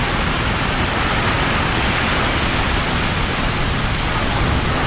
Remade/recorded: recorded